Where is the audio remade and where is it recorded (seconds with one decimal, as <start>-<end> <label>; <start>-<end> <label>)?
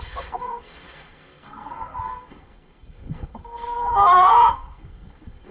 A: 0.0-5.5 remade